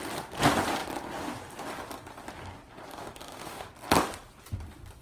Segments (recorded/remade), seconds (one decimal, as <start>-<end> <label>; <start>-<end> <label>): 0.0-3.0 recorded; 3.0-3.7 remade; 3.7-5.0 recorded